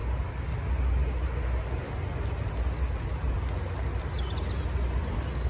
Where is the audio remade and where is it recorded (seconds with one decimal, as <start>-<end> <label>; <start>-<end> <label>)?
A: 0.0-5.5 recorded